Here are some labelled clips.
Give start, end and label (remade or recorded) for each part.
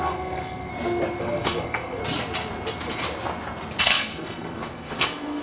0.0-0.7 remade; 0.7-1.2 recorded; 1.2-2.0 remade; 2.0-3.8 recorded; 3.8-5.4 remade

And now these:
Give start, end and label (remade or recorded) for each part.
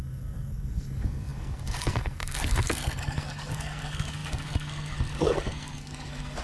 0.0-6.4 remade